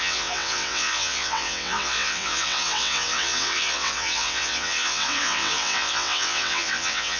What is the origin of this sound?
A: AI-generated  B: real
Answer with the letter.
A